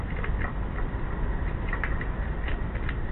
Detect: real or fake real